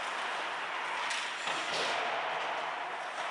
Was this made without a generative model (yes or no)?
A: yes